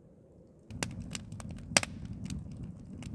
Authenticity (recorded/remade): recorded